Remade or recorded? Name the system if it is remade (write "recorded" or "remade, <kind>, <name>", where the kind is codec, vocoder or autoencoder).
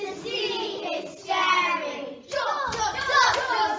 recorded